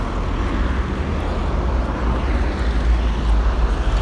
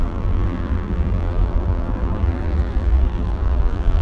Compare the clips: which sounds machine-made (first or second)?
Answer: second